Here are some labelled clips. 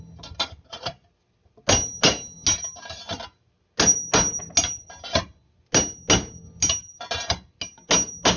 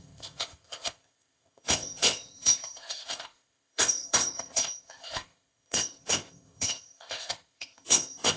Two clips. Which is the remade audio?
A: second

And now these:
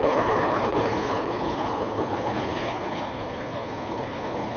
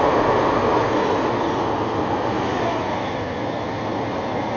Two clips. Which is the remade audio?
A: first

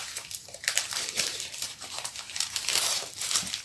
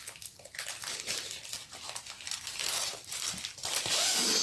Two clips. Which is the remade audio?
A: first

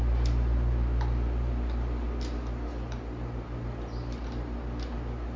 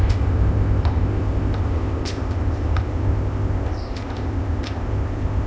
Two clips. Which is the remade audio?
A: second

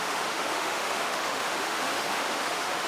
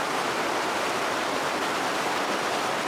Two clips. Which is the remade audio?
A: first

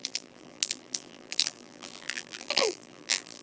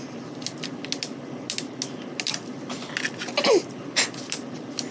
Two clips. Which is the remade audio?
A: first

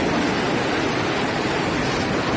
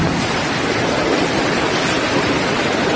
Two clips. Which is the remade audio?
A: second